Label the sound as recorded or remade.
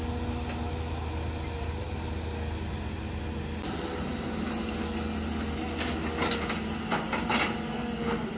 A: recorded